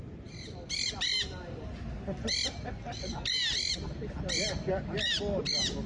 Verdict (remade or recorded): recorded